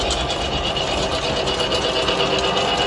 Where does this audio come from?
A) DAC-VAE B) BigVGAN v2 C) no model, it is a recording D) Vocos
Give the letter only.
C